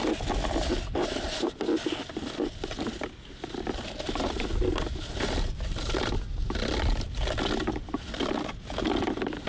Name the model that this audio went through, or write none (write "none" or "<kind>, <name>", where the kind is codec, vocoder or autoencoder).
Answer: none